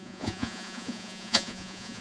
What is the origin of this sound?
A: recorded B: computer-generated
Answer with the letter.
B